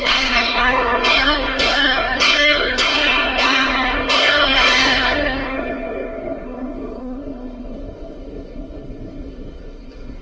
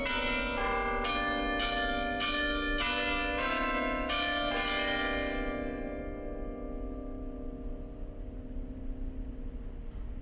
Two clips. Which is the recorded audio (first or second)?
second